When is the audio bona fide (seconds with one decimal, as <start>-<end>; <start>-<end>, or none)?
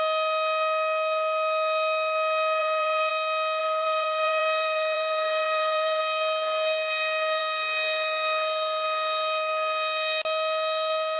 0.0-2.6; 3.1-3.6; 6.0-11.2